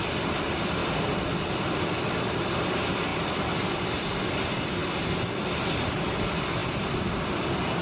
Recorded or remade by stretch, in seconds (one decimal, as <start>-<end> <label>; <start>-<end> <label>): 0.0-3.1 recorded; 3.1-4.2 remade; 4.2-7.8 recorded